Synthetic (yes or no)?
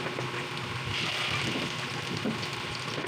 no